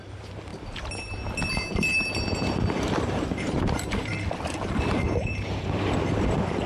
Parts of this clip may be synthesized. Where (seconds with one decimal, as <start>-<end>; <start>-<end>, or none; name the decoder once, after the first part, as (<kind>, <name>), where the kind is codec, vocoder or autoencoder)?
0.0-0.5 (vocoder, BigVGAN v2); 2.1-4.1; 4.9-6.7